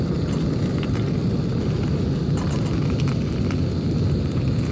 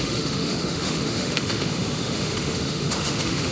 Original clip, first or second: first